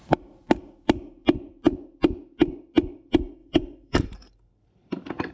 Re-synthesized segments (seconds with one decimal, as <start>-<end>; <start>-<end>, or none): 3.4-5.3